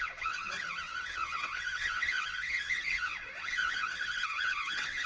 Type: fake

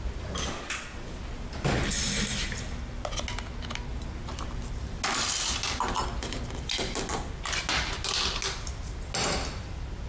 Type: real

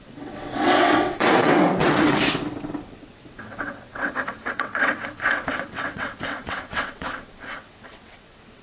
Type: fake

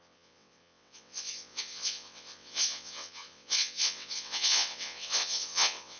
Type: fake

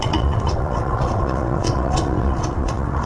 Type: fake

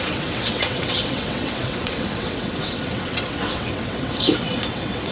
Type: fake